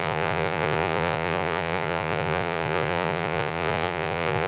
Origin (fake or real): fake